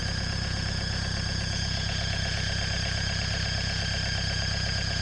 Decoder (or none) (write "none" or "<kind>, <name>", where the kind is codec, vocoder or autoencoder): vocoder, Vocos